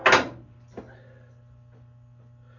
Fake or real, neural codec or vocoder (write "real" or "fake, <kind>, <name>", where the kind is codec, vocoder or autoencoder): real